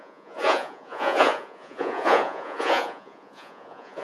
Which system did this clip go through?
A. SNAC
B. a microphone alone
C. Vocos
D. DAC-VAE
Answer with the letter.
C